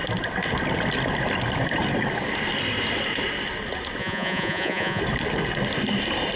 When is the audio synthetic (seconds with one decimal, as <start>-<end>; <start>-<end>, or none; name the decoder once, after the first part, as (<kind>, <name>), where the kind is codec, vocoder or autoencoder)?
4.0-5.0 (vocoder, Vocos)